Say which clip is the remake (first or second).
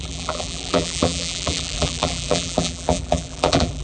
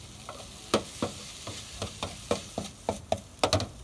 first